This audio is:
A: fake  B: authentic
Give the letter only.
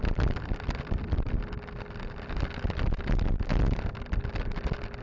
B